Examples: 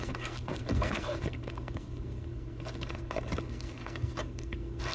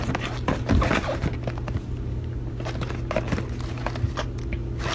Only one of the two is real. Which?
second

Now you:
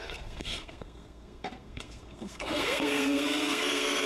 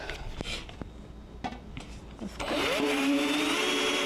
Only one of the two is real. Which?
second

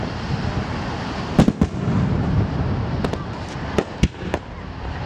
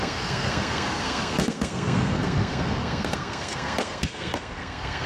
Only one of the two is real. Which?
first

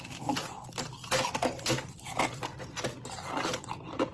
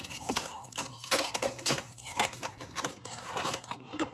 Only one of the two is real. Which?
first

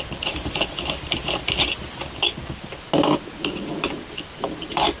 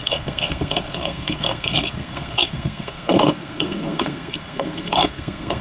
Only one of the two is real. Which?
first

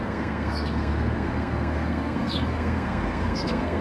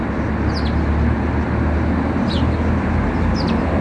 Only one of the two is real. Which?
second